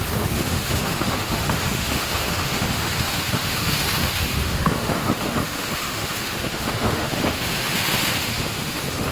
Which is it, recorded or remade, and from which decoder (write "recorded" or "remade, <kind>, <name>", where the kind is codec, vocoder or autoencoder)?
remade, autoencoder, DAC-VAE